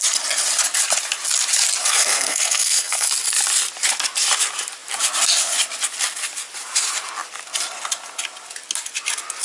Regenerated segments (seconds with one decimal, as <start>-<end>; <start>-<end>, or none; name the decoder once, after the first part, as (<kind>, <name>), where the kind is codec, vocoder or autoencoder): 1.8-3.1 (codec, SNAC)